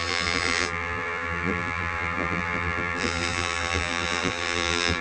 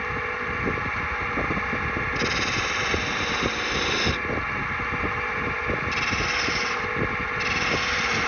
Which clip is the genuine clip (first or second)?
second